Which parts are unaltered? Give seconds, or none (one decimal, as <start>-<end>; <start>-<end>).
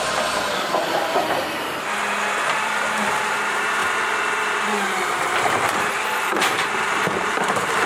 none